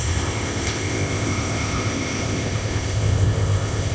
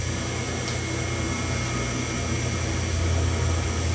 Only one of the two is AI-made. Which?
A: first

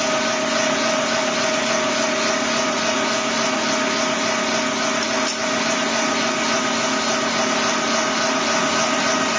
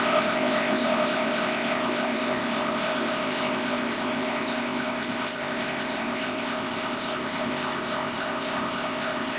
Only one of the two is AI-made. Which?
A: second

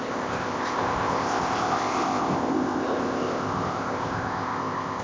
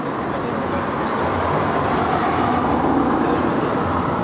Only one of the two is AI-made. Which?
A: first